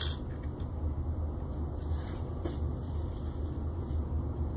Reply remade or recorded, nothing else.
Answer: recorded